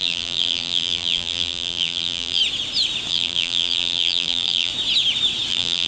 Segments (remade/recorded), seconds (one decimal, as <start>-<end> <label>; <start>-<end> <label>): 0.0-2.4 remade; 2.4-3.1 recorded; 3.1-4.7 remade; 4.7-5.5 recorded; 5.5-5.9 remade